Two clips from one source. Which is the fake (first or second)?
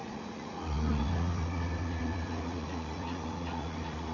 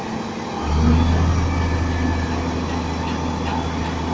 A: first